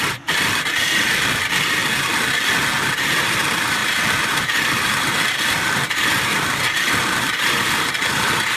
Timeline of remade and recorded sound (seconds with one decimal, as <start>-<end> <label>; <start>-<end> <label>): 0.0-1.8 remade; 1.8-3.0 recorded; 3.0-8.6 remade